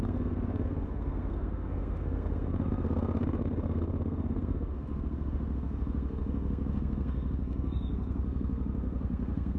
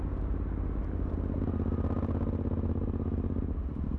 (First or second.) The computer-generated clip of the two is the first